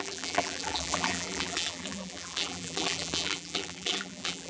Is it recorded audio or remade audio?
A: remade